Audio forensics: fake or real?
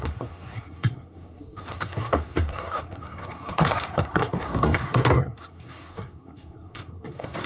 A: fake